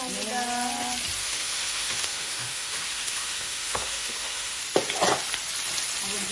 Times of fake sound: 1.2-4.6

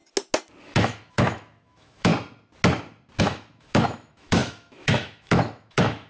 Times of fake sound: 0.6-2.1; 3.2-6.1

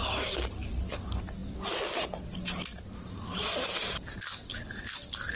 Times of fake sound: none

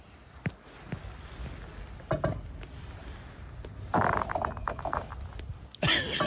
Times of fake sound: 4.6-5.1

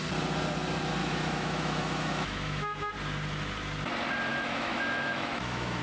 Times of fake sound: 1.0-2.9; 4.3-5.8

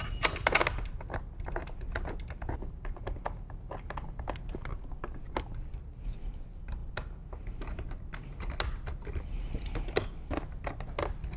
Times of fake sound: none